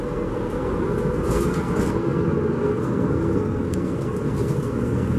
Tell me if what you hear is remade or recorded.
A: remade